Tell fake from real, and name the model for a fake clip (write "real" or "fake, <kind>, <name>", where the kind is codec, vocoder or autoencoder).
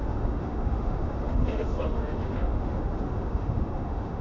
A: fake, autoencoder, DAC-VAE